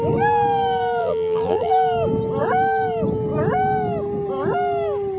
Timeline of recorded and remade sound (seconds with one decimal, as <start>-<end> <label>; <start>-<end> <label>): 0.0-1.0 recorded; 1.0-1.7 remade; 1.7-5.2 recorded

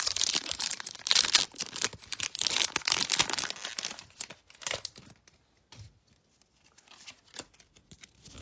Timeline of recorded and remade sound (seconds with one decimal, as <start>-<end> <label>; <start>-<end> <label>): 0.0-8.4 recorded

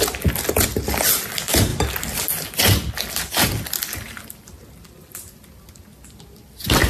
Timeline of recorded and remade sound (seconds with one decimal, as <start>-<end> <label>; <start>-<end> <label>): 0.0-6.9 recorded

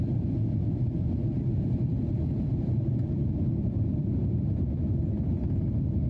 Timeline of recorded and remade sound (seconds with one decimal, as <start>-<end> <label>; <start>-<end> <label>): 0.0-1.5 recorded; 1.5-4.1 remade; 4.1-6.1 recorded

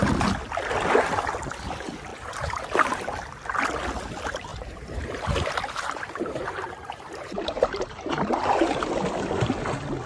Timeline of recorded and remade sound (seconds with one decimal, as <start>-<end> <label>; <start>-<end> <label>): 0.0-2.1 recorded; 2.1-2.6 remade; 2.6-4.5 recorded; 4.5-8.9 remade; 8.9-10.1 recorded